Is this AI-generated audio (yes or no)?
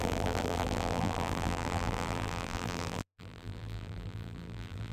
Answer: yes